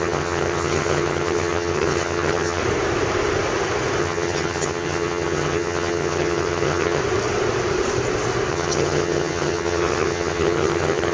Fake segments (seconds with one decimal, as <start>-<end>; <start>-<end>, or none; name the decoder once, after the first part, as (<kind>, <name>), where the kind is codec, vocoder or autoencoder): 0.0-2.6 (vocoder, HiFi-GAN); 4.0-7.0; 8.5-11.1